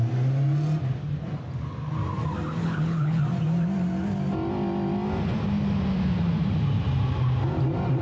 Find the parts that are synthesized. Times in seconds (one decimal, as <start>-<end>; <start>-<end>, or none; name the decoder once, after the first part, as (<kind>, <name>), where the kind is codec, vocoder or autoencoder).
2.6-3.2 (codec, HILCodec)